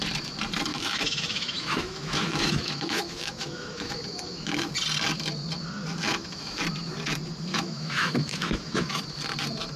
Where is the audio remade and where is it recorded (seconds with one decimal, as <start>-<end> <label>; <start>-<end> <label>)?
0.0-0.7 recorded; 0.7-4.7 remade; 4.7-6.0 recorded; 6.0-6.6 remade; 6.6-7.5 recorded; 7.5-9.0 remade; 9.0-9.8 recorded